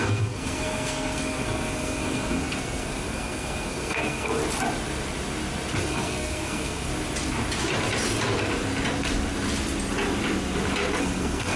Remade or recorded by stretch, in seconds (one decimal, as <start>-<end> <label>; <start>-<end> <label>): 0.0-4.4 remade; 4.4-5.8 recorded; 5.8-6.9 remade; 6.9-11.0 recorded; 11.0-11.6 remade